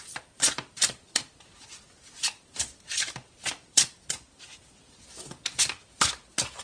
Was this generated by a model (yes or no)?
no